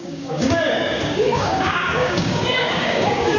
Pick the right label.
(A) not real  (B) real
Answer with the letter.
A